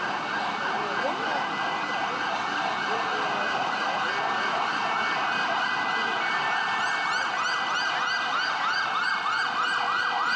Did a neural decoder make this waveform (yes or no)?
no